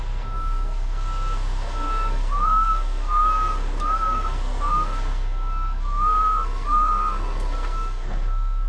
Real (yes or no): no